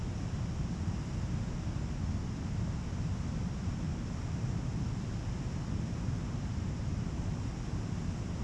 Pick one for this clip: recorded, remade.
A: recorded